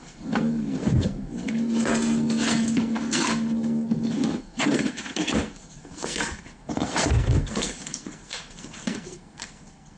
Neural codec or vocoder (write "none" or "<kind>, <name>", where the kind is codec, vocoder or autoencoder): codec, SNAC